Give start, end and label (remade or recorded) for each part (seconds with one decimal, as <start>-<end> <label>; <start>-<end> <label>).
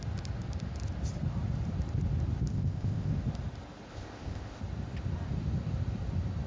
0.0-2.5 recorded; 2.5-3.1 remade; 3.1-3.9 recorded; 3.9-4.6 remade; 4.6-6.5 recorded